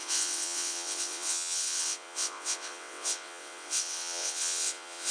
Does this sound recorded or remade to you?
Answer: remade